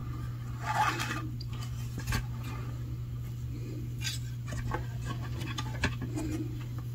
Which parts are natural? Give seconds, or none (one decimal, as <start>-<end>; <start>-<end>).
0.0-6.9